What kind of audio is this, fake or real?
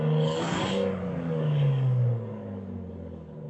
fake